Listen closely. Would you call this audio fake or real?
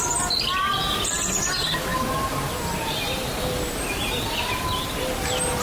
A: real